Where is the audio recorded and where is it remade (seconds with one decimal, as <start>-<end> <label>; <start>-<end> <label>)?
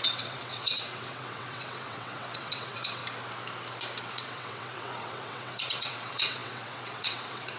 0.0-3.0 remade; 3.0-4.1 recorded; 4.1-7.6 remade